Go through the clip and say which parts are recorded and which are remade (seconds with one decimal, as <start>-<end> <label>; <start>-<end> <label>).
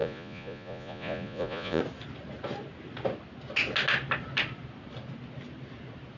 0.0-1.8 remade; 1.8-6.2 recorded